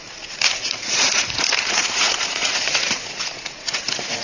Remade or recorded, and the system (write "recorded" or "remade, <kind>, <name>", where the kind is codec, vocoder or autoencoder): remade, vocoder, Vocos